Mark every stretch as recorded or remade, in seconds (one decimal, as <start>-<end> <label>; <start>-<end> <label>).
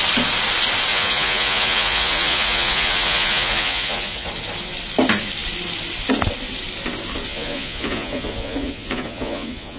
0.0-0.9 recorded; 0.9-4.3 remade; 4.3-7.3 recorded; 7.3-9.8 remade